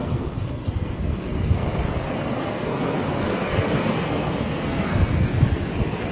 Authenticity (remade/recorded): remade